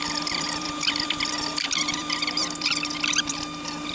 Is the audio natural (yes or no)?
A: no